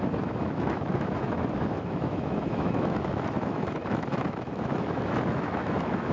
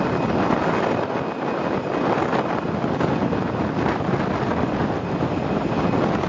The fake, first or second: first